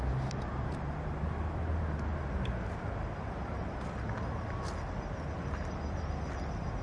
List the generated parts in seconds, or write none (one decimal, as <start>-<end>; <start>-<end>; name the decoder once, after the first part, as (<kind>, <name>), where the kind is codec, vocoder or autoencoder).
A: none